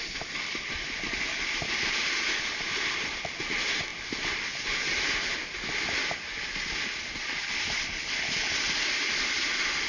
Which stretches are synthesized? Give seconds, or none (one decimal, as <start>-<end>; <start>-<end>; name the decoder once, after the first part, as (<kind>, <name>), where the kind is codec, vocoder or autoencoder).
none